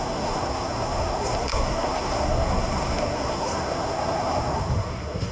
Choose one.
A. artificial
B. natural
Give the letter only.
A